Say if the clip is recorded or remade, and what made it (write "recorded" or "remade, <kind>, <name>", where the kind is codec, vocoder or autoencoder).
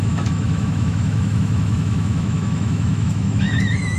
remade, autoencoder, DAC-VAE